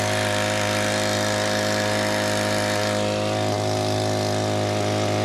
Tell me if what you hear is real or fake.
real